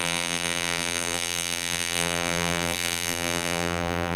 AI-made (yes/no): yes